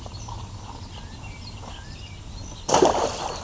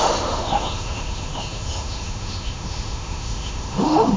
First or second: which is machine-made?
second